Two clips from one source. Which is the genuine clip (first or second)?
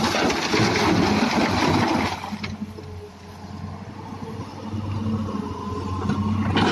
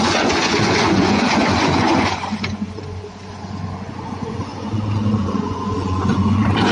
first